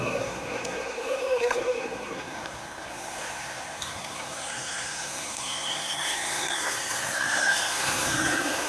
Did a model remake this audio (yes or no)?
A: yes